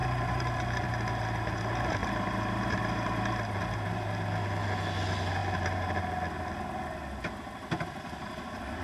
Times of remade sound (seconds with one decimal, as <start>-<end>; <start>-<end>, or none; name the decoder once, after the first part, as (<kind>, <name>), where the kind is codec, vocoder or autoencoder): 0.0-0.9 (vocoder, BigVGAN v2); 2.0-3.1; 5.4-6.0